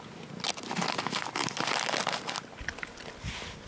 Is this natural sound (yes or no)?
yes